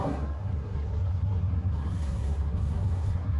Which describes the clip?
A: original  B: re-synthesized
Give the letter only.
B